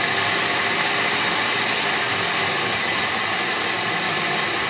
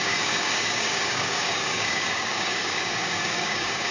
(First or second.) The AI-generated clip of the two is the second